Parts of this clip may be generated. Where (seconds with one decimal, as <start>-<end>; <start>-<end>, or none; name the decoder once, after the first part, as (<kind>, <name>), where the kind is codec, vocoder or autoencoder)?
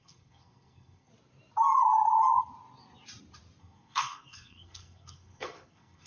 0.0-1.1 (codec, SNAC); 3.6-6.1